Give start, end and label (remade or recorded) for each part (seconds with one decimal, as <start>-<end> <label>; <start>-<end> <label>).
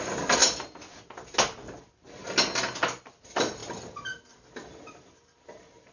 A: 0.0-5.9 recorded